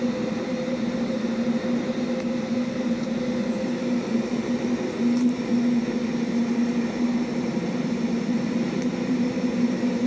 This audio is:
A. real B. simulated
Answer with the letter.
B